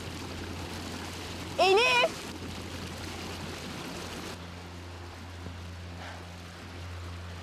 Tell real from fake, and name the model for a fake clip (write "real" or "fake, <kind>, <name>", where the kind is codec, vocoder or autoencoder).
real